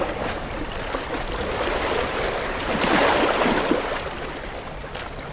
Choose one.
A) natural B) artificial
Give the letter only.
A